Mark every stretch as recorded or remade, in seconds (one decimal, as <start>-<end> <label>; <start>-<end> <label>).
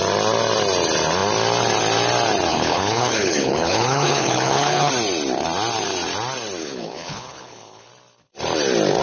0.0-2.5 recorded; 2.5-4.9 remade; 4.9-6.6 recorded; 6.6-7.9 remade; 7.9-9.0 recorded